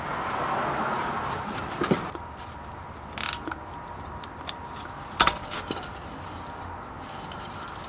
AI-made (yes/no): no